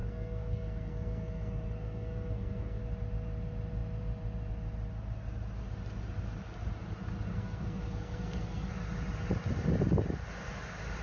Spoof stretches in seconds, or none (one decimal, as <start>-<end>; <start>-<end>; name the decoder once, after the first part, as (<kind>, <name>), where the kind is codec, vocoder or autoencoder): 0.0-2.8 (codec, SNAC); 7.3-8.7